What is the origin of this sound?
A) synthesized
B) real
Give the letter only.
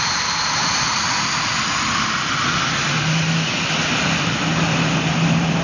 B